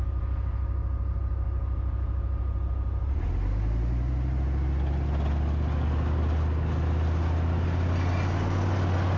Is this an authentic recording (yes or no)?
yes